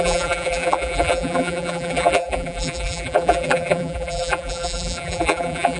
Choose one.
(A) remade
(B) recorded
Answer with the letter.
A